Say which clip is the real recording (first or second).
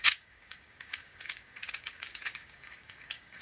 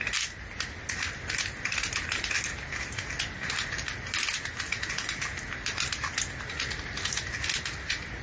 second